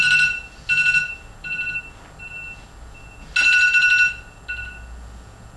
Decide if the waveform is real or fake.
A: real